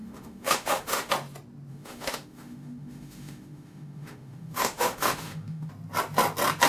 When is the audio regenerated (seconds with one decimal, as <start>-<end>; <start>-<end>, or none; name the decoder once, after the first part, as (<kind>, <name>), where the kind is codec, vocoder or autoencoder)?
0.0-1.1 (autoencoder, DAC-VAE); 1.7-5.7